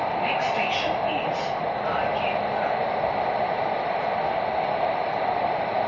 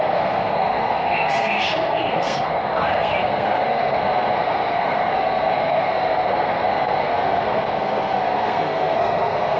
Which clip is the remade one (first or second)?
second